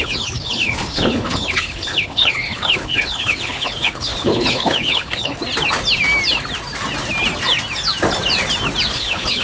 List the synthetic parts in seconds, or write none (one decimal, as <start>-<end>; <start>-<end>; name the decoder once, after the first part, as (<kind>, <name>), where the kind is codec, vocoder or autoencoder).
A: 0.0-5.4 (codec, HILCodec); 8.9-9.4